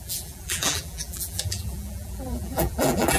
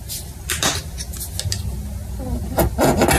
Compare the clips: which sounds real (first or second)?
second